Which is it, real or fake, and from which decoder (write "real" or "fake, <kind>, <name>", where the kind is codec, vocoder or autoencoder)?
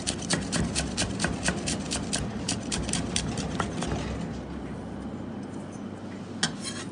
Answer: real